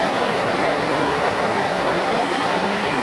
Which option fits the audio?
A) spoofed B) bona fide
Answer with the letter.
A